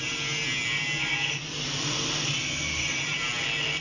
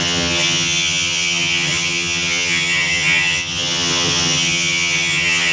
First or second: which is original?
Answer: first